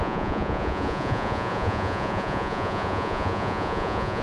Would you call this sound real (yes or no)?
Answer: no